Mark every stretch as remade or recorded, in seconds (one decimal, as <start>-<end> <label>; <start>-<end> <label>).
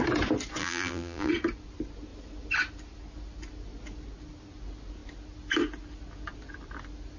0.0-0.6 recorded; 0.6-1.3 remade; 1.3-7.2 recorded